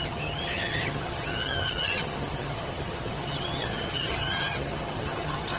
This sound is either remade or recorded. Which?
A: remade